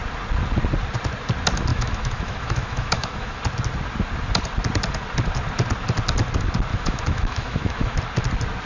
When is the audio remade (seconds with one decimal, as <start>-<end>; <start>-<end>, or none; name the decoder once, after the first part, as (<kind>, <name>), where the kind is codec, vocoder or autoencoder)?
1.7-3.4 (autoencoder, DAC-VAE); 6.7-8.0